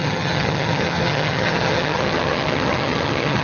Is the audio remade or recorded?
remade